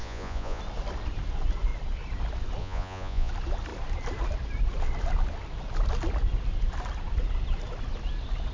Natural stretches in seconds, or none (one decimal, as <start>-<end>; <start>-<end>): 0.6-2.6; 3.3-8.5